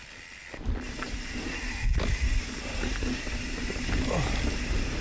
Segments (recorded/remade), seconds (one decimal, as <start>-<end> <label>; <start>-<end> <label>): 0.0-5.0 recorded